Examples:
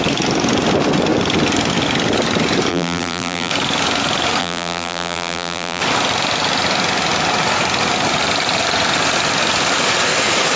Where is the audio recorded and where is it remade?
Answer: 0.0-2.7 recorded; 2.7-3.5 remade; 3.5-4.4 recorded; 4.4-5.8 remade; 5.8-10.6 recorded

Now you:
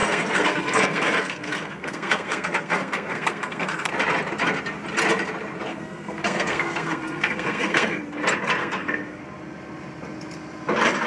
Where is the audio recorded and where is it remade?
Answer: 0.0-3.9 remade; 3.9-5.7 recorded; 5.7-8.0 remade; 8.0-8.6 recorded; 8.6-9.2 remade; 9.2-11.1 recorded

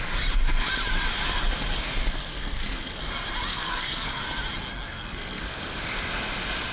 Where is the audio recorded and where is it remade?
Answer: 0.0-2.3 recorded; 2.3-3.0 remade; 3.0-3.5 recorded; 3.5-4.2 remade; 4.2-4.7 recorded; 4.7-5.4 remade; 5.4-6.7 recorded

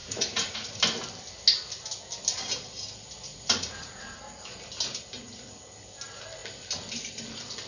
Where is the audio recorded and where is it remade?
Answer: 0.0-0.8 remade; 0.8-3.3 recorded; 3.3-4.2 remade; 4.2-7.7 recorded

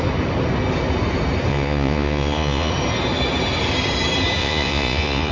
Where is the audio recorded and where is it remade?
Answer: 0.0-1.5 recorded; 1.5-2.7 remade; 2.7-4.4 recorded; 4.4-5.3 remade

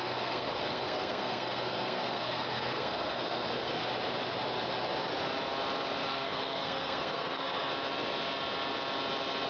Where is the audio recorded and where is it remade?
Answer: 0.0-3.8 remade; 3.8-6.1 recorded; 6.1-7.7 remade; 7.7-9.5 recorded